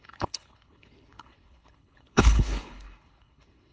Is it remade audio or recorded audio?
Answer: remade